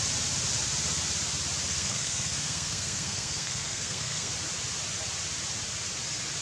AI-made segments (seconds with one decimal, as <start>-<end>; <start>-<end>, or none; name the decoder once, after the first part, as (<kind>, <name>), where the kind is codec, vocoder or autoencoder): 1.7-4.3 (codec, SNAC)